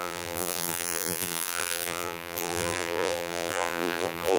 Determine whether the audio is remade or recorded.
remade